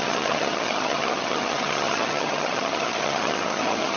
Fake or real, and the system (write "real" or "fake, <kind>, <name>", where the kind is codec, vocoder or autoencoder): fake, vocoder, HiFi-GAN